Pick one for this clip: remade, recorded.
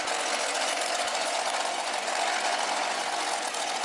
remade